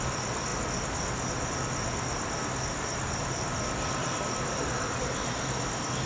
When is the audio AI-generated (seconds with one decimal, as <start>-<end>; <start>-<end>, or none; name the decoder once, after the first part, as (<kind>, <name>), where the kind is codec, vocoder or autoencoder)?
none